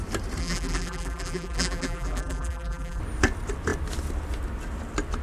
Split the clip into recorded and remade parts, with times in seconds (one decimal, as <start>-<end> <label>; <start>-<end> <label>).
0.0-0.4 recorded; 0.4-3.0 remade; 3.0-5.2 recorded